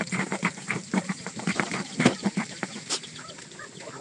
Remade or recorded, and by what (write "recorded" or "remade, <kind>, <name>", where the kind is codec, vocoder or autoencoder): remade, vocoder, BigVGAN v2